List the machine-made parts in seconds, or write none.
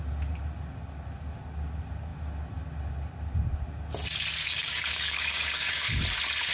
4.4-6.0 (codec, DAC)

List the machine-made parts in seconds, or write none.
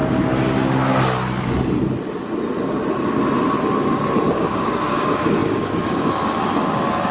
4.3-7.1 (codec, DAC)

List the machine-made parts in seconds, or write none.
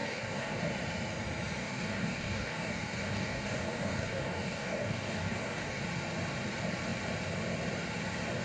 0.0-0.6 (codec, DAC); 1.6-5.8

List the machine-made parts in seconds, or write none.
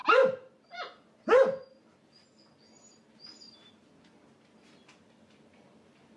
none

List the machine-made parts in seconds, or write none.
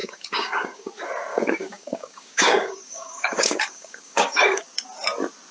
0.0-0.9 (codec, DAC); 1.3-4.6